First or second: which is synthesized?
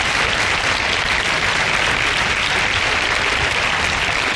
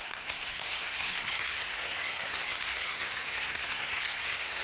second